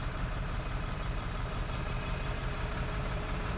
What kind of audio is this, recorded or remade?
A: remade